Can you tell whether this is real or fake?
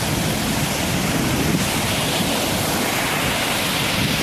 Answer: real